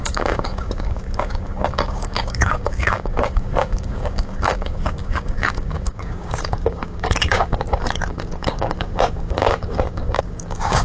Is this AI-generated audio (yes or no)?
yes